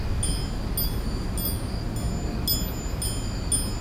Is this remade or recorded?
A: recorded